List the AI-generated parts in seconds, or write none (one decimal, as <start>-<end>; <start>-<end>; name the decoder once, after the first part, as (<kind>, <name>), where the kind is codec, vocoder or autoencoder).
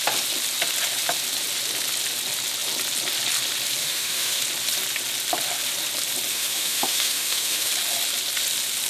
3.8-4.4 (autoencoder, DAC-VAE); 6.3-7.7